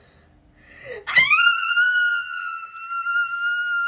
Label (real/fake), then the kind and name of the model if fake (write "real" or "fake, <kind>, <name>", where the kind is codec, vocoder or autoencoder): real